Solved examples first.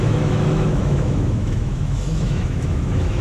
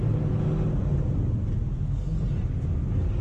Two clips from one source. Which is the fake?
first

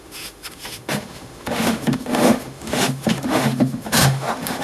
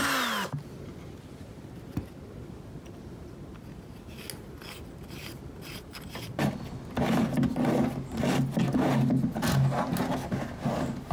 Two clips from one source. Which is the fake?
first